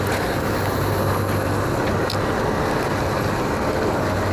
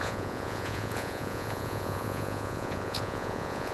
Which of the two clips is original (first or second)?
first